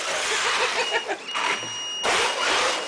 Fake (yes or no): no